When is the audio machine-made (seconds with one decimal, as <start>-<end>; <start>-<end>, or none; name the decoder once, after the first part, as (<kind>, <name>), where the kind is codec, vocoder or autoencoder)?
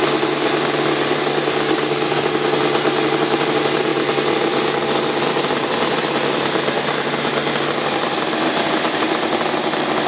1.2-2.2 (codec, DAC)